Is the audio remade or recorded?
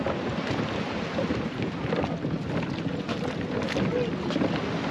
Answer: recorded